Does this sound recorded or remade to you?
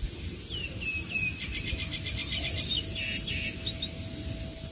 recorded